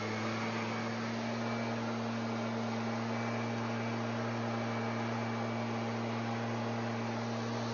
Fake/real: real